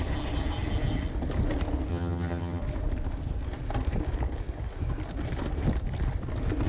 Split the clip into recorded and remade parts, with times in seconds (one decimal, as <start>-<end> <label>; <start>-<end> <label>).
0.0-1.9 recorded; 1.9-2.6 remade; 2.6-6.7 recorded